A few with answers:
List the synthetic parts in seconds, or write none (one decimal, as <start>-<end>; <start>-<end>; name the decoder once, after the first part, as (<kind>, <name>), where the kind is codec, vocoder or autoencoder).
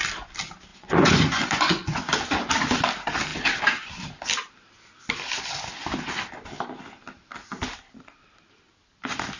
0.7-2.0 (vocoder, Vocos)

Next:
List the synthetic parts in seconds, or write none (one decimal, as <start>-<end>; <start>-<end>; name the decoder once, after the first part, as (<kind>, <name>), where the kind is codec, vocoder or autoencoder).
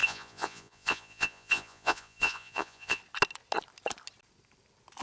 0.0-3.0 (vocoder, Vocos)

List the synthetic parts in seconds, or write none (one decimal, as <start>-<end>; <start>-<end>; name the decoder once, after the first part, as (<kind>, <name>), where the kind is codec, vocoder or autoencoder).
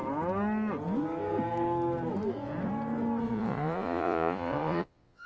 3.2-5.3 (vocoder, Vocos)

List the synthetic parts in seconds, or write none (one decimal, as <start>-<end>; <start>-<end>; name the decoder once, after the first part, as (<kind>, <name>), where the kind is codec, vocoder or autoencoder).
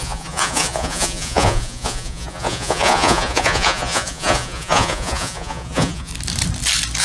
0.0-6.1 (vocoder, Vocos)